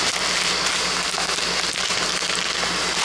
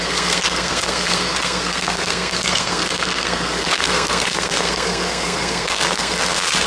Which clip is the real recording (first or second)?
first